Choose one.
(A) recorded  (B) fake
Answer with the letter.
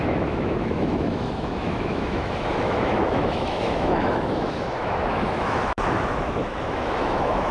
B